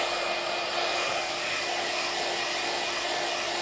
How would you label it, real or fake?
real